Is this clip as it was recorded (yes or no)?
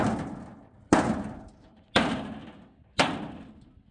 yes